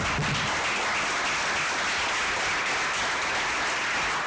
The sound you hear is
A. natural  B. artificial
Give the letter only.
A